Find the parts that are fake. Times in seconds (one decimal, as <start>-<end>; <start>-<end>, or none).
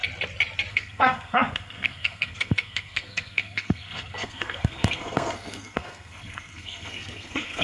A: 0.7-7.6